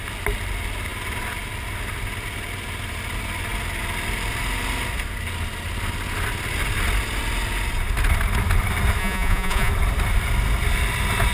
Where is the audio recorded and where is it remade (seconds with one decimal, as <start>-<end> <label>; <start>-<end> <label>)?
0.0-9.0 recorded; 9.0-9.7 remade; 9.7-11.3 recorded